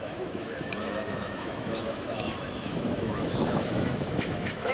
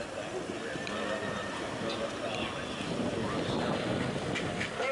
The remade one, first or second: first